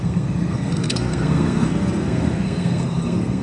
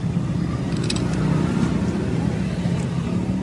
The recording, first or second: second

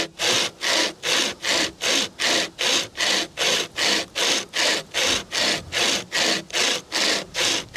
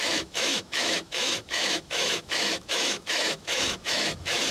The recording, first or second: first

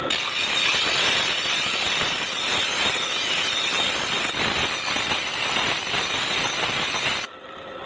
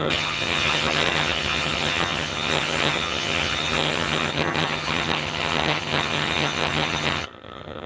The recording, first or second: first